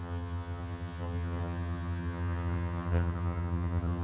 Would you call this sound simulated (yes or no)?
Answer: yes